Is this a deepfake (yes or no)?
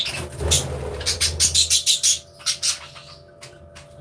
no